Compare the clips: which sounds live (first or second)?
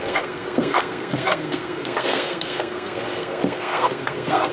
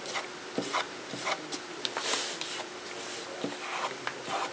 second